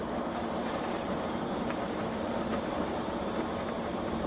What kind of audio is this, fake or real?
fake